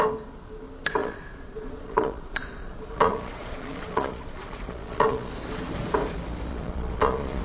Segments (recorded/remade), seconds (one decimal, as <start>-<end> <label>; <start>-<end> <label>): 0.0-1.0 recorded; 1.0-5.3 remade; 5.3-6.5 recorded; 6.5-7.4 remade